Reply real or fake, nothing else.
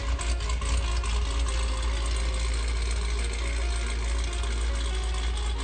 real